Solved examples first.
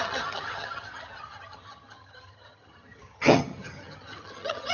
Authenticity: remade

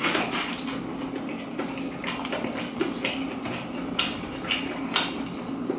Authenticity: recorded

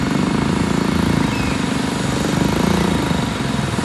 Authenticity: recorded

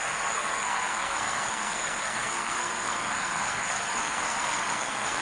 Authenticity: remade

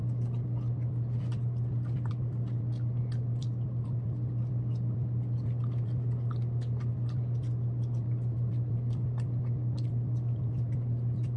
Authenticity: recorded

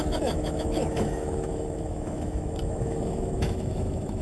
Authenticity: remade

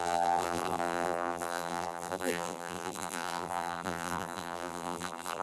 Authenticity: remade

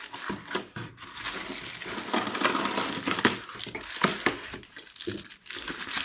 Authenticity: recorded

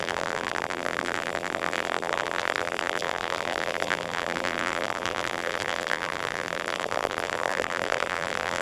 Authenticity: remade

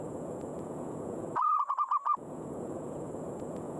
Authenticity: remade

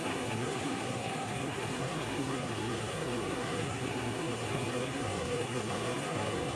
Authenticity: remade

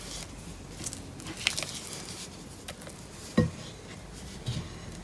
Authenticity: recorded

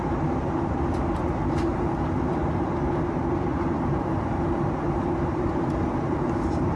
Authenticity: remade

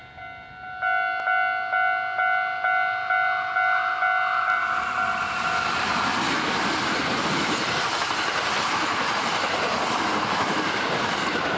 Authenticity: recorded